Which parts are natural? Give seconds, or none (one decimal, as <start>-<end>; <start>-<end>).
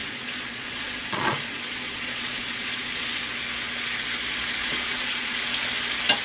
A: 3.2-4.6; 5.4-6.2